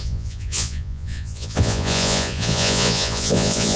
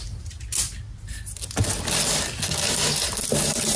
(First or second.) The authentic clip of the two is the second